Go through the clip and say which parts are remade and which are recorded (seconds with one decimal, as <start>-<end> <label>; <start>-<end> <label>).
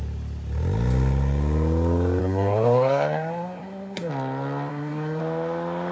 0.0-2.2 recorded; 2.2-4.1 remade; 4.1-4.7 recorded; 4.7-5.2 remade; 5.2-5.9 recorded